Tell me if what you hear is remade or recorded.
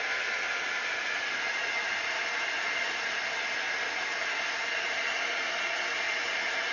recorded